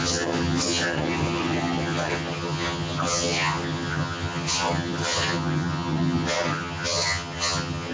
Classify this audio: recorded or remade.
remade